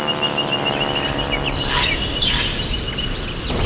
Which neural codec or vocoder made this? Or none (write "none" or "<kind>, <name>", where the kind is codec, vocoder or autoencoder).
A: none